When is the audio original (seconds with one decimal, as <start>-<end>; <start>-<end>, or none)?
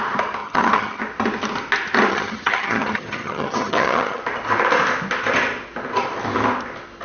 0.0-0.4; 1.0-2.1; 4.2-7.0